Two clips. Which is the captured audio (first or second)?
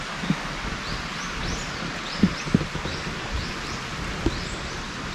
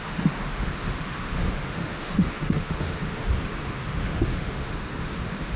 first